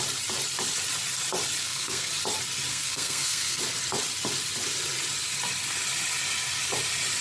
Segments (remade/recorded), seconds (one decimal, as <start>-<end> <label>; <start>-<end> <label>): 0.0-1.6 recorded; 1.6-2.1 remade; 2.1-2.7 recorded; 2.7-3.6 remade; 3.6-7.2 recorded